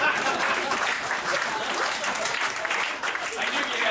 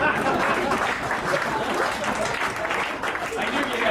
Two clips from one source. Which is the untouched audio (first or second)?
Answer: second